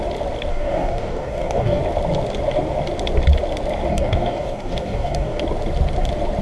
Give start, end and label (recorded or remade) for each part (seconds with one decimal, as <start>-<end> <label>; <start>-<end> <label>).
0.0-0.5 recorded; 0.5-1.8 remade; 1.8-3.9 recorded; 3.9-5.4 remade; 5.4-6.4 recorded